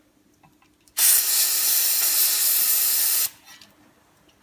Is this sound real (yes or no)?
yes